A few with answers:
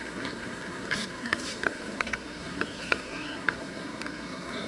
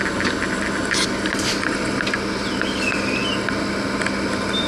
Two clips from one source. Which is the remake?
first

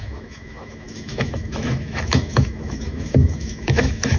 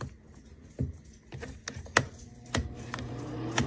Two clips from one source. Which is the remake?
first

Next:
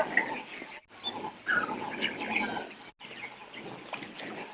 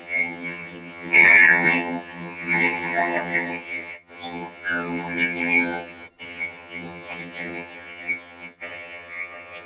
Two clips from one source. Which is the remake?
second